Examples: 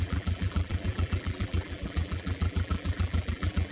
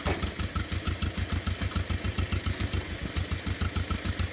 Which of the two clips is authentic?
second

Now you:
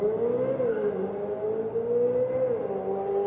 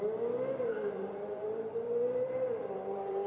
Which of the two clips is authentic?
first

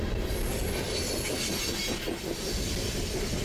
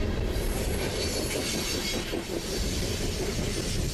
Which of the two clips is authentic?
first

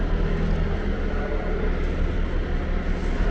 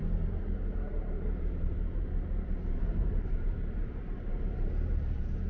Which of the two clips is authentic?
first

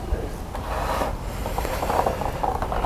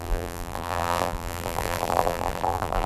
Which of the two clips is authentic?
first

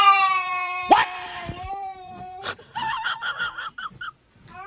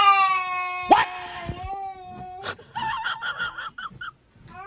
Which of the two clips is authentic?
second